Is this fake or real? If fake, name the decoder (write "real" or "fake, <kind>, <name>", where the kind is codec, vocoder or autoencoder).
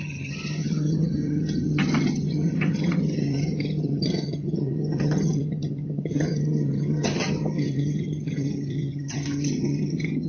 fake, vocoder, HiFi-GAN